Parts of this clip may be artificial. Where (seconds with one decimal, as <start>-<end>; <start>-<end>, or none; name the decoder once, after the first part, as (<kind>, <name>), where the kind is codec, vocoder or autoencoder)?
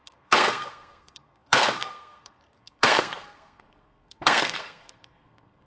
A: 0.0-5.7 (codec, SNAC)